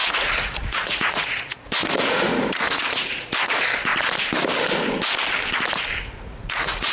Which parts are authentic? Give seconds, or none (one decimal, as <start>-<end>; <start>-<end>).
3.9-6.0